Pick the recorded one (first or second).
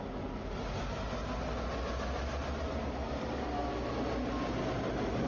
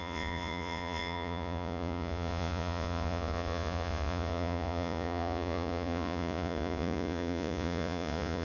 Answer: first